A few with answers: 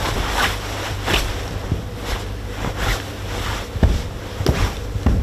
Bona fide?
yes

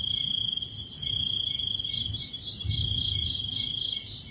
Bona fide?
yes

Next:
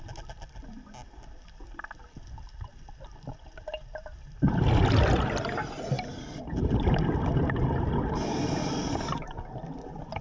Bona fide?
no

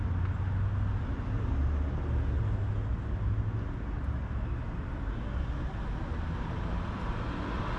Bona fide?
yes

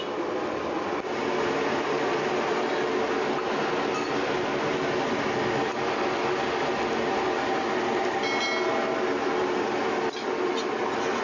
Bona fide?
yes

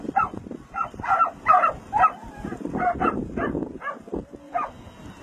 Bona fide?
no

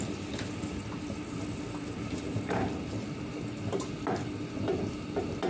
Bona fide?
yes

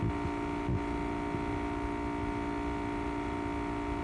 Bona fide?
yes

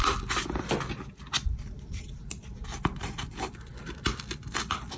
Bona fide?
no